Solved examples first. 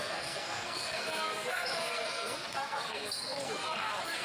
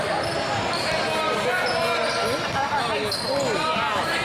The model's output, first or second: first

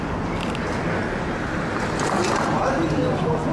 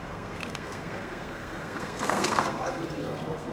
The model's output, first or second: second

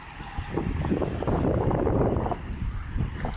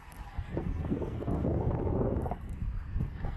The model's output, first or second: second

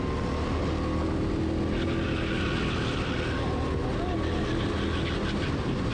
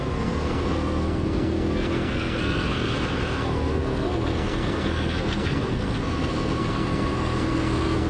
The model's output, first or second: second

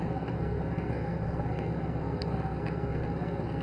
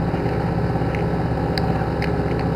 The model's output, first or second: first